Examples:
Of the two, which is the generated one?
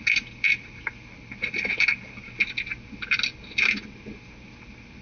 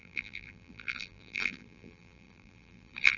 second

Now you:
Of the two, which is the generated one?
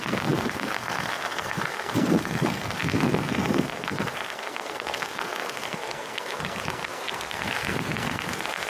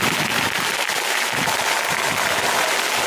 first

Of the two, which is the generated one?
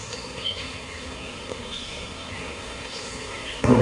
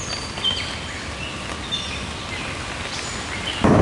first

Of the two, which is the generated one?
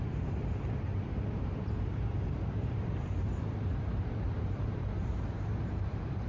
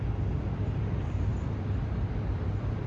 first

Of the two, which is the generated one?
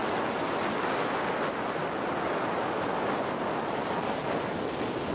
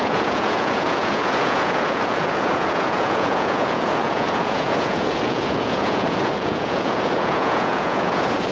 second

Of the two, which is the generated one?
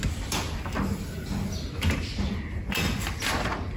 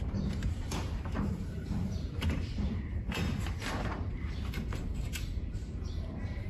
second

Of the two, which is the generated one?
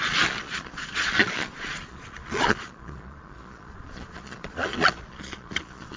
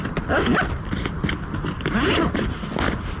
first